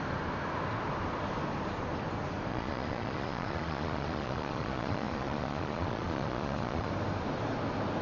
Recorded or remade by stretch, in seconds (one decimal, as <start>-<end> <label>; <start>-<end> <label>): 0.0-2.5 recorded; 2.5-6.9 remade; 6.9-8.0 recorded